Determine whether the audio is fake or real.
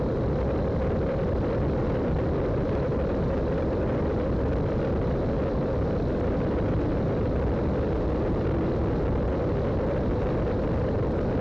real